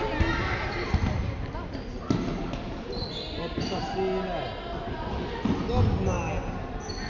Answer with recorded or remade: recorded